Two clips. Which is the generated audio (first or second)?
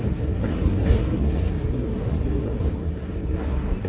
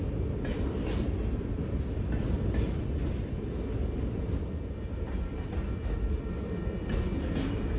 first